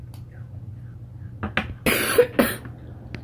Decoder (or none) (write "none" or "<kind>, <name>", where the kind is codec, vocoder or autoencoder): none